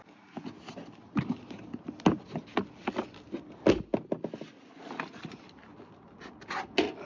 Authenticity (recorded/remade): recorded